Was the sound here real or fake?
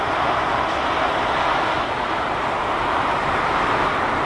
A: real